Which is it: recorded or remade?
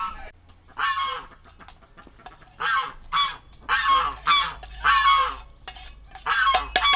recorded